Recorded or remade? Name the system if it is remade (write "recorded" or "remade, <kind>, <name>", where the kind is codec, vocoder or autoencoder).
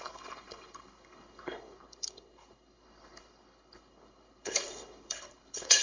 remade, codec, HILCodec